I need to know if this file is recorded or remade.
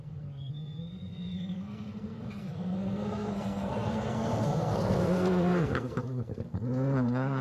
remade